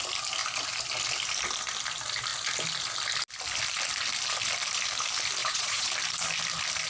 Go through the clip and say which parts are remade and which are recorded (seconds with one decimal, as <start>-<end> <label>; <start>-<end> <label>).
0.0-5.4 recorded; 5.4-5.9 remade; 5.9-6.9 recorded